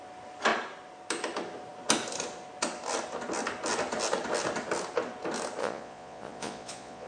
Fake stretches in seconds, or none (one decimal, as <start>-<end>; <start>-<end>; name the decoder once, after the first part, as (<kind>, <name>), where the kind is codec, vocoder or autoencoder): 5.6-7.1 (vocoder, Vocos)